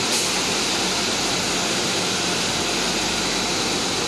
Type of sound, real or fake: real